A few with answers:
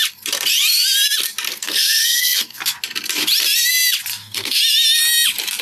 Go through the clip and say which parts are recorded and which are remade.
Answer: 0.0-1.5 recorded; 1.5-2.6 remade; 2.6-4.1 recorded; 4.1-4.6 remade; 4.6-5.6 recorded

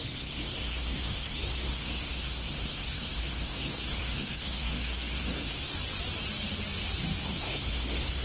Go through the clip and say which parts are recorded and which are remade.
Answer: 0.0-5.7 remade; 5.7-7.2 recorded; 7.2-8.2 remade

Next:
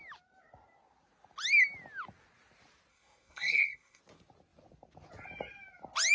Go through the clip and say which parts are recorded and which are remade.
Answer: 0.0-2.9 recorded; 2.9-4.0 remade; 4.0-6.1 recorded